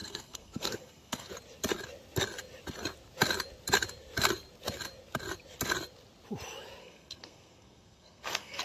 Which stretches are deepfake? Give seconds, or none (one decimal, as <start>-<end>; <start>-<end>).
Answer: 0.0-1.3; 6.8-8.6